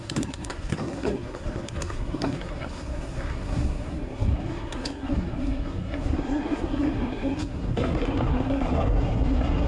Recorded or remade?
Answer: remade